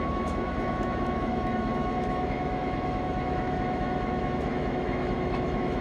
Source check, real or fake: fake